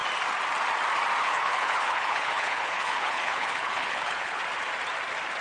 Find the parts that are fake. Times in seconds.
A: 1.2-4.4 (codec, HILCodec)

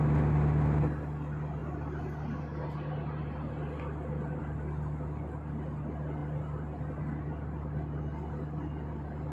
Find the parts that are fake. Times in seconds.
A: none

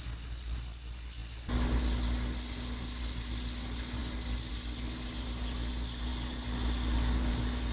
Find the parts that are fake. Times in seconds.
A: 0.0-7.7 (vocoder, BigVGAN v2)